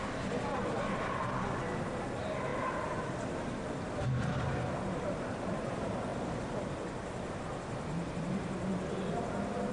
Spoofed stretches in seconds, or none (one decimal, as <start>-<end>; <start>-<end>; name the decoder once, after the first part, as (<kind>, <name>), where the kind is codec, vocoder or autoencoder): none